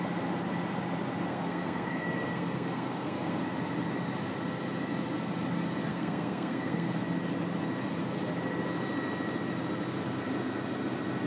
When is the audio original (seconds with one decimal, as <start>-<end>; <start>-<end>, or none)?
0.0-1.3; 3.4-5.9; 7.0-11.3